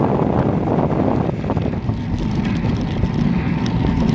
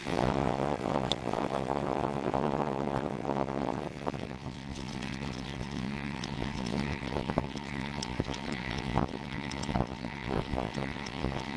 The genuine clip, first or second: first